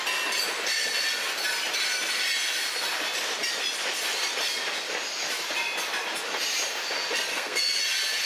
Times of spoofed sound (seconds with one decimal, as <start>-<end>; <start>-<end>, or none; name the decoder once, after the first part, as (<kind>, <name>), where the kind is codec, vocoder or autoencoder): 7.3-7.8 (codec, SNAC)